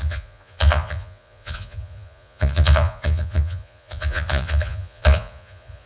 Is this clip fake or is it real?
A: fake